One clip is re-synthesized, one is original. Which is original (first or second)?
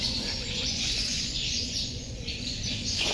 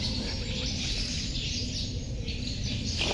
second